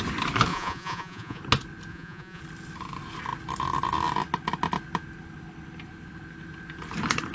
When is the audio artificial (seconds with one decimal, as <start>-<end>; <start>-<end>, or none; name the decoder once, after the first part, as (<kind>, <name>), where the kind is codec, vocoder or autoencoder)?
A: 0.5-1.4 (vocoder, Vocos); 1.9-2.4